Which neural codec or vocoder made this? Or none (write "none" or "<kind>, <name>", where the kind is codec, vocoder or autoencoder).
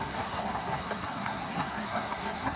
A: codec, SNAC